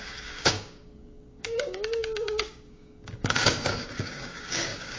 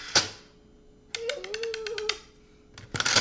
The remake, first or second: first